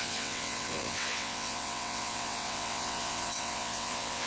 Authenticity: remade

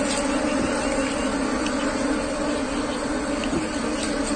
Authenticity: recorded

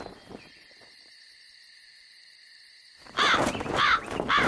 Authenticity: recorded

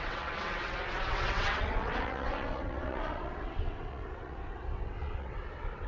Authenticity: remade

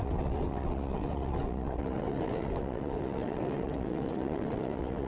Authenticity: remade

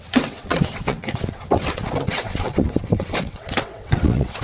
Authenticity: remade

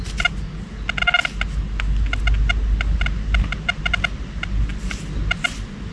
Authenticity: recorded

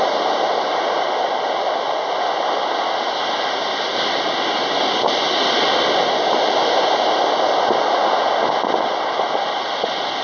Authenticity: recorded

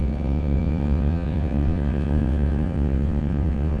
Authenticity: remade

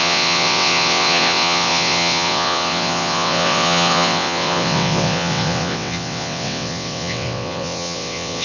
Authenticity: remade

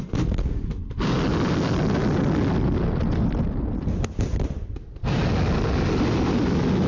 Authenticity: recorded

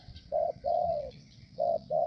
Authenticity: remade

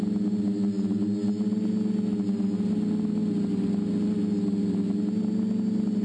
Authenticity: recorded